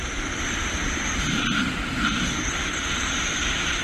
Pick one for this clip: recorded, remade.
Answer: remade